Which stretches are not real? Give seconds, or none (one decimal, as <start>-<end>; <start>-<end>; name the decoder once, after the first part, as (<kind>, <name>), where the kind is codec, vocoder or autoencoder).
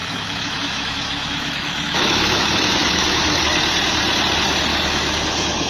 0.0-3.4 (autoencoder, DAC-VAE); 4.7-5.7